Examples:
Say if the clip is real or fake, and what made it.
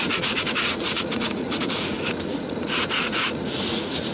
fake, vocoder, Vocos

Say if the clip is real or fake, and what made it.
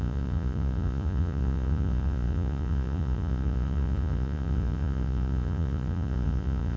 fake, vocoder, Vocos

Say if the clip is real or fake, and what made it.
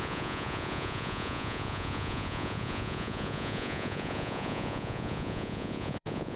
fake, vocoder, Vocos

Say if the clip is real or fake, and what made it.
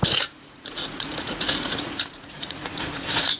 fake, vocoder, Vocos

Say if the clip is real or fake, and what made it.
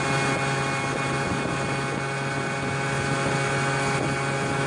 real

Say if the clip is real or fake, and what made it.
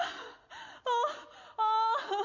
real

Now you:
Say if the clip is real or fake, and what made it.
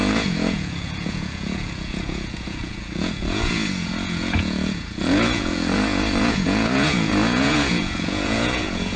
fake, vocoder, Vocos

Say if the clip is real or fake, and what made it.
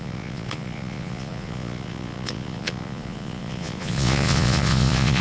fake, vocoder, Vocos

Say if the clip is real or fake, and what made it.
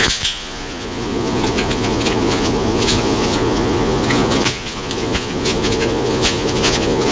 fake, vocoder, Vocos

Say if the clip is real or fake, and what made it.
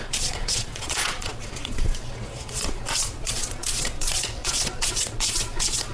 fake, vocoder, Vocos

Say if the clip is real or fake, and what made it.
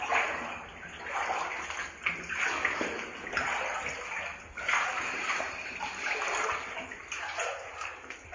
real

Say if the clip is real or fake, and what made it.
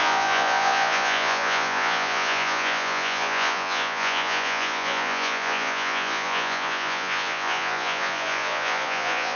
fake, vocoder, Vocos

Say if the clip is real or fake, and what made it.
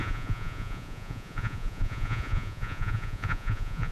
fake, vocoder, Vocos